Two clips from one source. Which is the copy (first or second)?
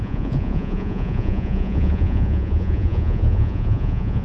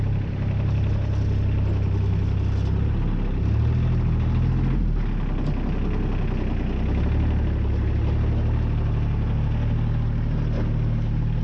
first